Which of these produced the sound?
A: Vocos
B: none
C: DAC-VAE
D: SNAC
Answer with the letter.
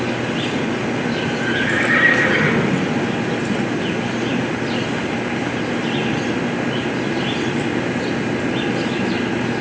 B